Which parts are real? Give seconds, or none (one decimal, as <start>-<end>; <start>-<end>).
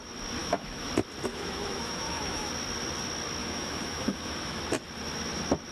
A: 0.0-0.4; 0.9-1.3; 2.5-3.4; 4.6-5.7